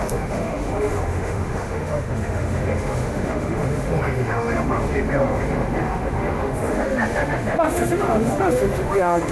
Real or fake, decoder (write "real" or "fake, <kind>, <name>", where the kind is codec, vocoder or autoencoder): fake, autoencoder, DAC-VAE